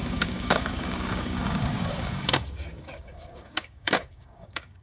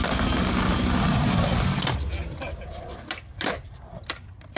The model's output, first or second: first